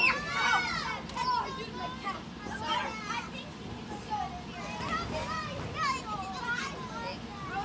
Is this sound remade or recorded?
recorded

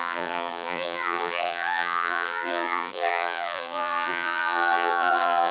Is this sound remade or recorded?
remade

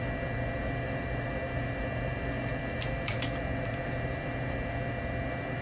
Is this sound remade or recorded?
remade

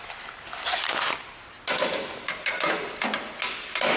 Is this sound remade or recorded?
recorded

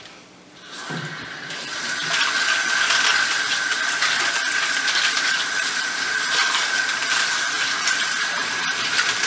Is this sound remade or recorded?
remade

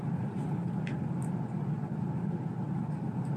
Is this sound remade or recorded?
recorded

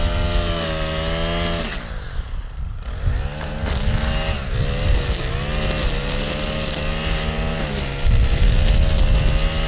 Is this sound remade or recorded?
recorded